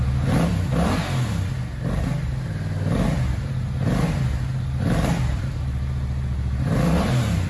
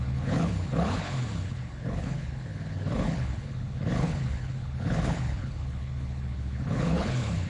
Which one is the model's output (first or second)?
second